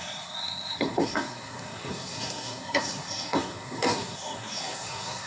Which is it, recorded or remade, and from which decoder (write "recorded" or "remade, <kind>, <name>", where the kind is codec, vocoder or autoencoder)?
remade, codec, SNAC